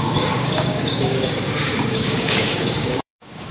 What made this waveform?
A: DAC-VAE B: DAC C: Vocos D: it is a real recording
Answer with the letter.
B